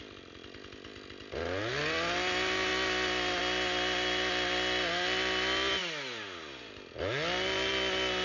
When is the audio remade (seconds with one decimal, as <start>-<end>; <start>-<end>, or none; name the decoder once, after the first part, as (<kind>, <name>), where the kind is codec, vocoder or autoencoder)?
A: none